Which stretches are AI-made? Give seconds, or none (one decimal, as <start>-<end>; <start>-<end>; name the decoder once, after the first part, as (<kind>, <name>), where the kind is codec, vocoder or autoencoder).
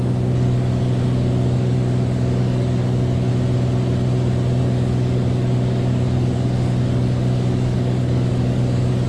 0.0-3.3 (codec, DAC); 4.6-9.1